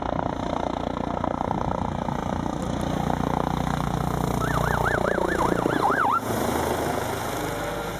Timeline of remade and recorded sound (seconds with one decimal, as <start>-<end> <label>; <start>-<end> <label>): 0.0-8.0 recorded